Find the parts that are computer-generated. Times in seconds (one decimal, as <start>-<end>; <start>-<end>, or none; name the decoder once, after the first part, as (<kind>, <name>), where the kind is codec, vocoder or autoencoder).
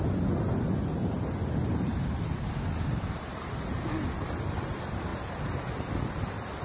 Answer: 1.9-3.5 (vocoder, BigVGAN v2)